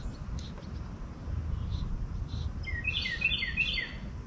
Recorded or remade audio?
recorded